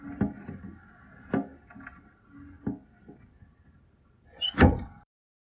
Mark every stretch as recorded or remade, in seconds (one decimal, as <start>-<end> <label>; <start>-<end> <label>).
0.0-5.6 recorded